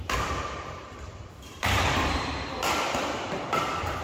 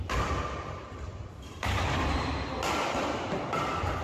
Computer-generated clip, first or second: first